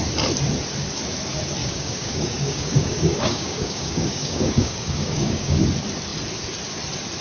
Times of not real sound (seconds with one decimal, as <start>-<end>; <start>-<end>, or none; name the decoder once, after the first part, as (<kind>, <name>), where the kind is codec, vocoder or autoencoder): 1.6-5.6 (codec, DAC)